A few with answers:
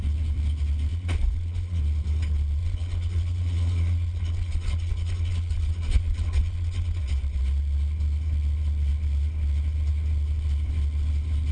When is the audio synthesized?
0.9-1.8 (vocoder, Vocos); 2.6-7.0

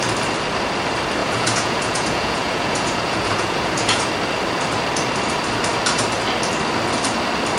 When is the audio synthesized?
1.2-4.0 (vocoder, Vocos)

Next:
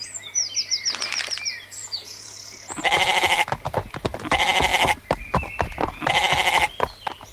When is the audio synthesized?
2.0-2.8 (vocoder, Vocos)